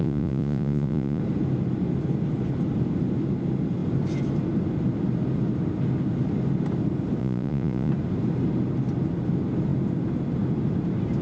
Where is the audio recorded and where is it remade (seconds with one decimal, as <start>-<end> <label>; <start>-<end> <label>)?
0.0-1.2 remade; 1.2-7.2 recorded; 7.2-7.9 remade; 7.9-11.2 recorded